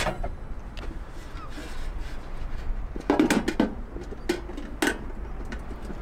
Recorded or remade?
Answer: recorded